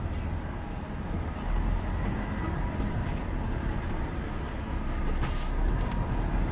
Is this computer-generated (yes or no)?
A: no